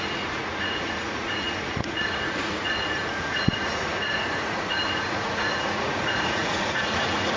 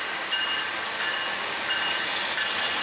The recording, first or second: second